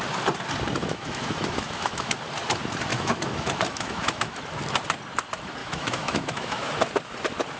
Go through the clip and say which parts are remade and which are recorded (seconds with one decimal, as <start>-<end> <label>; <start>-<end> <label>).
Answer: 0.0-0.8 recorded; 0.8-2.1 remade; 2.1-2.9 recorded; 2.9-4.4 remade; 4.4-5.6 recorded; 5.6-6.7 remade; 6.7-7.6 recorded